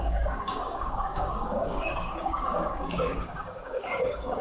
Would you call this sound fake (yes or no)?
yes